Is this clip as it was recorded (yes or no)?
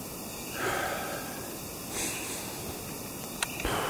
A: yes